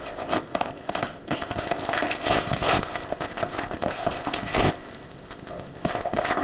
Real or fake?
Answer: fake